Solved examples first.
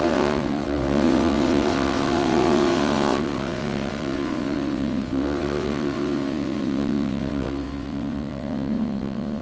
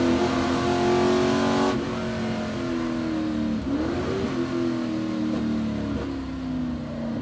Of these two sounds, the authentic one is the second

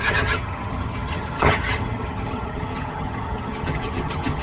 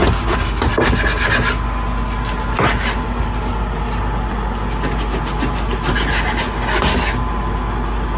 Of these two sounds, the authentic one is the second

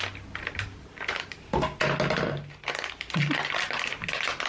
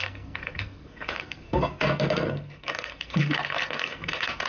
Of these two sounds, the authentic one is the first